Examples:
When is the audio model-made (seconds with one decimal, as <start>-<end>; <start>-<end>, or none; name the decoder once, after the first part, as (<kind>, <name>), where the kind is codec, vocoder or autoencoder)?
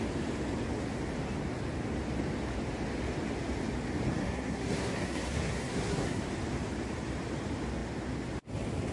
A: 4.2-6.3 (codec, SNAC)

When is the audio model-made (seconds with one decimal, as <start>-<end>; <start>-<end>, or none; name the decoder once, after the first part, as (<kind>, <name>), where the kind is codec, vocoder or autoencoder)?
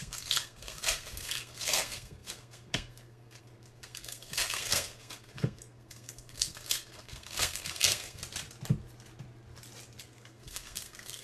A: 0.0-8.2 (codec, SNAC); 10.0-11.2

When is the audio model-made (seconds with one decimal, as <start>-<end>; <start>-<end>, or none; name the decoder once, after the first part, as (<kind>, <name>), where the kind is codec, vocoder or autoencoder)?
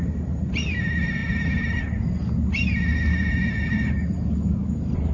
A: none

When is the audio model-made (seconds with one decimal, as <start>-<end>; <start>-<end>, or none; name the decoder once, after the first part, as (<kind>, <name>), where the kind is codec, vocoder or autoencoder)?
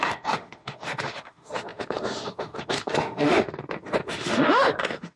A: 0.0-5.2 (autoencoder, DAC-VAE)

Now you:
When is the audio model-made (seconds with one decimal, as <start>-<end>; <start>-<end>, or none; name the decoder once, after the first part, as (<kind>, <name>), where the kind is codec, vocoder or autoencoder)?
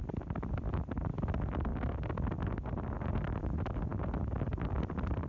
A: none